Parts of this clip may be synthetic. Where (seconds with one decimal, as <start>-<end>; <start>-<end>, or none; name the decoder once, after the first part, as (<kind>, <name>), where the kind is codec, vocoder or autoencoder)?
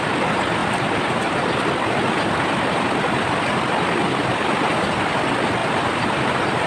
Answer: 0.6-1.6 (vocoder, BigVGAN v2); 5.6-6.7